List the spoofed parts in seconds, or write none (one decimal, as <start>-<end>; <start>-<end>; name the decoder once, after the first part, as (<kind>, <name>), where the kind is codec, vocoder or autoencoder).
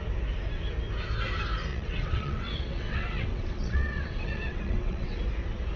1.7-5.2 (vocoder, WaveNeXt)